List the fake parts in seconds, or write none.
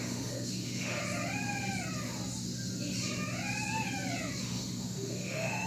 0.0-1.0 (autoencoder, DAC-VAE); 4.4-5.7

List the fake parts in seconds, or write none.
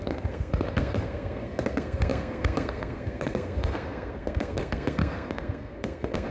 0.0-6.3 (codec, SNAC)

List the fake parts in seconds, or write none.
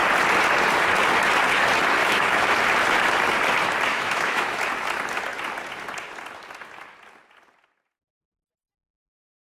2.0-2.6 (autoencoder, DAC-VAE); 3.9-4.6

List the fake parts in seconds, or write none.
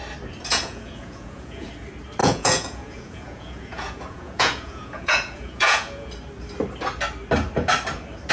0.5-1.7 (vocoder, Vocos); 2.2-6.1